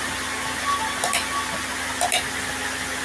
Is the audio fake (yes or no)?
no